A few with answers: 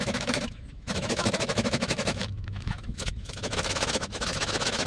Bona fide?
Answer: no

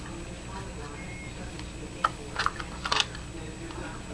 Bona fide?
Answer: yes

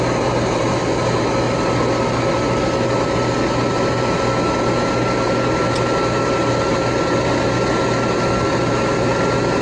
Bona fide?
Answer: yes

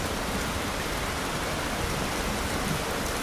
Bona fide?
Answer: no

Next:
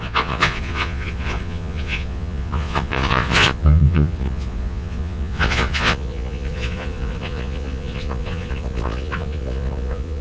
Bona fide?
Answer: no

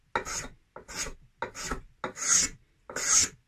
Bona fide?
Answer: yes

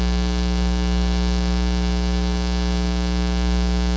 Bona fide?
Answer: no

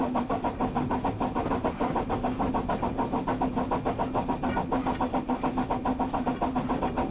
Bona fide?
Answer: yes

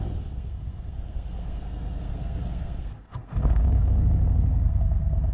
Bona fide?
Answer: no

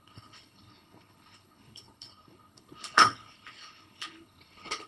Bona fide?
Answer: no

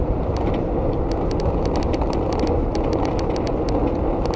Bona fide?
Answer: yes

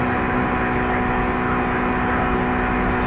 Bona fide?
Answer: yes